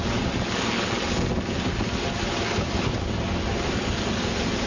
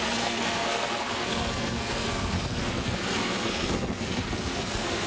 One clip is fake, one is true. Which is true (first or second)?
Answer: first